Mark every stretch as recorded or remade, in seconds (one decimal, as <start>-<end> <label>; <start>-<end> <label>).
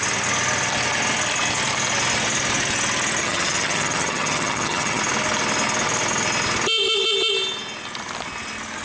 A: 0.0-3.2 recorded; 3.2-5.0 remade; 5.0-8.8 recorded